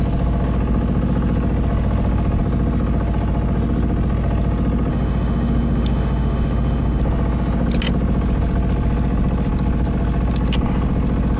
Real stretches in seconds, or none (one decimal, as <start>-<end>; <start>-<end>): 0.0-4.9; 7.0-11.4